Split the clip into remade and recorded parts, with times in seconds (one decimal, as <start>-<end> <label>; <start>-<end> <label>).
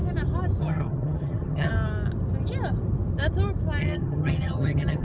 0.0-0.6 recorded; 0.6-1.7 remade; 1.7-3.8 recorded; 3.8-5.0 remade